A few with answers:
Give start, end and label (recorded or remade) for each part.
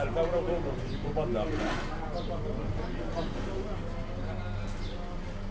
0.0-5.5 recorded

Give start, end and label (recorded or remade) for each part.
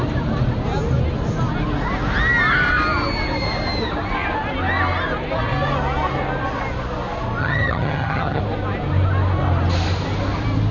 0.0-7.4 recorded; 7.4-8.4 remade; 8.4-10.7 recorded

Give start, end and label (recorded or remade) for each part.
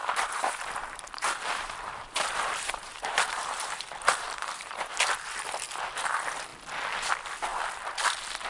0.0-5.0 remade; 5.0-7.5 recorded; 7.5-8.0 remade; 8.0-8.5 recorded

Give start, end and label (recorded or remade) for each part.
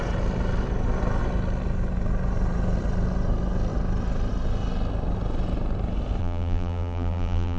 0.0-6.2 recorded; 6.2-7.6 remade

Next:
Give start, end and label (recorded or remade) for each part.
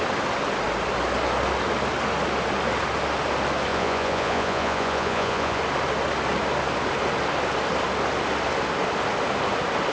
0.0-3.7 recorded; 3.7-5.6 remade; 5.6-9.9 recorded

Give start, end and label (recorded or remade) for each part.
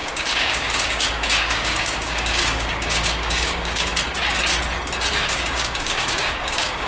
0.0-3.9 remade; 3.9-5.1 recorded; 5.1-6.9 remade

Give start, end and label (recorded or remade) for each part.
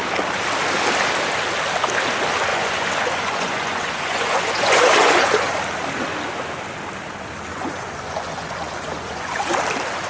0.0-2.5 recorded; 2.5-5.6 remade; 5.6-7.5 recorded; 7.5-9.5 remade; 9.5-10.1 recorded